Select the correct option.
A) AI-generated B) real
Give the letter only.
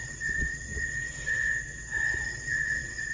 A